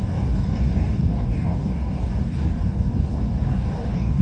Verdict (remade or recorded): remade